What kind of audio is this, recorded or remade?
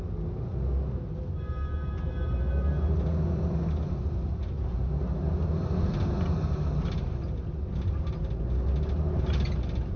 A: recorded